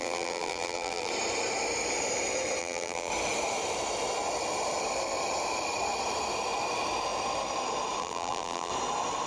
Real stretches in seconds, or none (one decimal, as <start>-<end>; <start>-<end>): 1.1-2.6; 3.1-8.0; 8.7-9.3